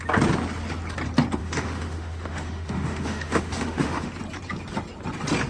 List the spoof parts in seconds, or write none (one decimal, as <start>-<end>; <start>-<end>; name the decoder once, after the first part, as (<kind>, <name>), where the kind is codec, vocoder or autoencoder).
1.4-4.1 (autoencoder, DAC-VAE)